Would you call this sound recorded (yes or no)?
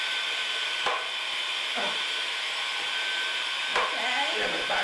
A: no